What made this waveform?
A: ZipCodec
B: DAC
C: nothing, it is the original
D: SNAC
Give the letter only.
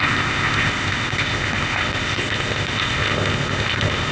A